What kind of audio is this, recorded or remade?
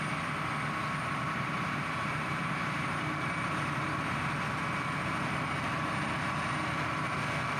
recorded